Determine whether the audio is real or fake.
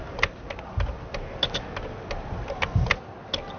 real